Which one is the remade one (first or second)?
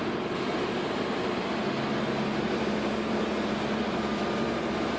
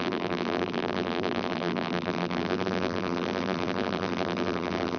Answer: second